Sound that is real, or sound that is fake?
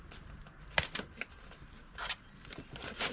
real